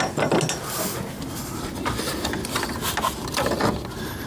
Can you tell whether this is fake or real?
real